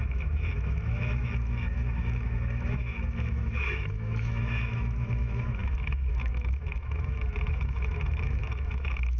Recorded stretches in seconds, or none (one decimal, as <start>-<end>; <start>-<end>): none